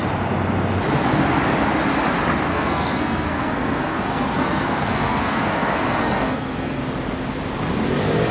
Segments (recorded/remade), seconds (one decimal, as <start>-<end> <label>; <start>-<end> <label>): 0.0-2.5 recorded; 2.5-6.8 remade; 6.8-8.3 recorded